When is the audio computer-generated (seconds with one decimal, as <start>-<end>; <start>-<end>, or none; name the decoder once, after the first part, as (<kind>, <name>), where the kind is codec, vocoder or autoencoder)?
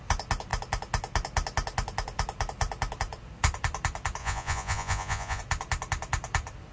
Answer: 4.2-5.4 (vocoder, Vocos)